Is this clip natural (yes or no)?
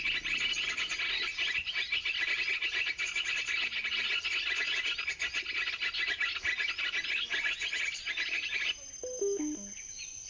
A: yes